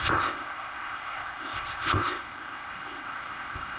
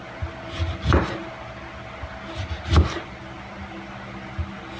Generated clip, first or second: first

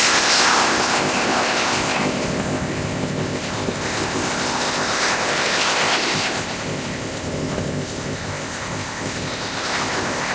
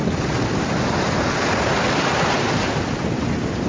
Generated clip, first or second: first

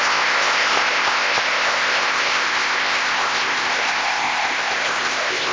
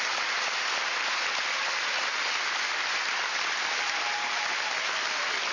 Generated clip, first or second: first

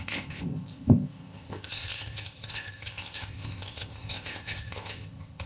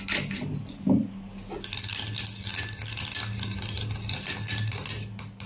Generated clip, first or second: first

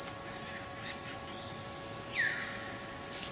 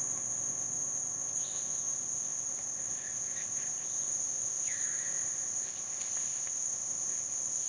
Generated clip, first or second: second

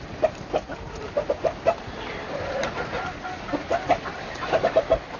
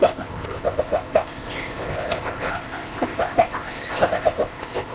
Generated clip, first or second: second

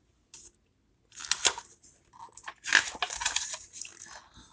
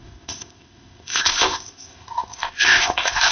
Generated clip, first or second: second